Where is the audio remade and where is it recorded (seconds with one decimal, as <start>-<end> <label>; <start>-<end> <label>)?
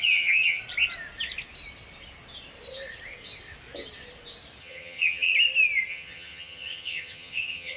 0.0-0.6 remade; 0.6-4.6 recorded; 4.6-5.3 remade; 5.3-5.9 recorded; 5.9-7.8 remade